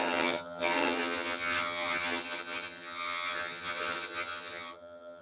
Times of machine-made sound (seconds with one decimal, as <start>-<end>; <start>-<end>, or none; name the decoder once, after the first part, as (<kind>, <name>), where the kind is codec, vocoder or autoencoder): 0.0-5.2 (vocoder, HiFi-GAN)